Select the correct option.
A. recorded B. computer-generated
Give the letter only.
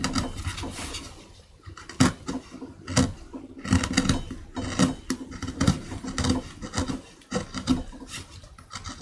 A